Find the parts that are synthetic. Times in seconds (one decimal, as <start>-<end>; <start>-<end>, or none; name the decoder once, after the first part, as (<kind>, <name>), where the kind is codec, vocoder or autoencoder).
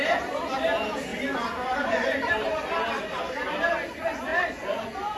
1.1-3.7 (vocoder, BigVGAN v2); 4.3-5.2